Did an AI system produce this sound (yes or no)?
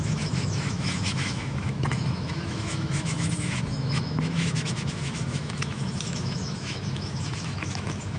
yes